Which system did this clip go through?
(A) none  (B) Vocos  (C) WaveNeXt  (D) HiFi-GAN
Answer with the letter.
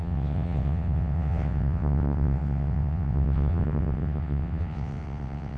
C